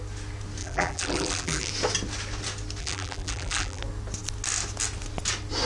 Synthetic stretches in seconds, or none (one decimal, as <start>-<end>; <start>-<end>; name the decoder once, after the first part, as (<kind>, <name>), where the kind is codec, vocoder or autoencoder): 0.6-1.7 (vocoder, BigVGAN v2); 2.8-3.8